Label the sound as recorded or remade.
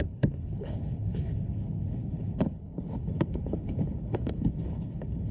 remade